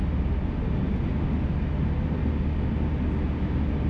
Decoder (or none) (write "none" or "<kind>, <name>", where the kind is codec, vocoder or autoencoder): none